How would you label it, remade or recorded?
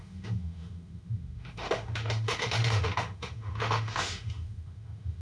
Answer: remade